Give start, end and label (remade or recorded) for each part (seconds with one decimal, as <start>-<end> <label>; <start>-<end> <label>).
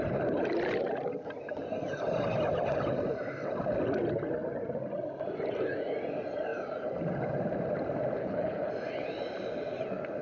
0.0-8.2 recorded; 8.2-8.7 remade; 8.7-10.2 recorded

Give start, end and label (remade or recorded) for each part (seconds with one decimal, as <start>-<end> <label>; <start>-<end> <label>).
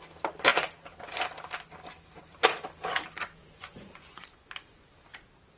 0.0-3.4 recorded; 3.4-4.9 remade; 4.9-5.6 recorded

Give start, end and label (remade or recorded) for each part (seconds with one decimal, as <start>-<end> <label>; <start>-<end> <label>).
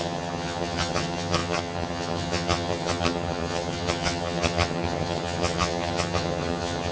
0.0-6.9 remade